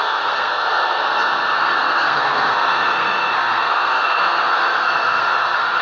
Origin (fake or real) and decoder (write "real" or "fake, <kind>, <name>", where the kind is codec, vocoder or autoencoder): fake, codec, SNAC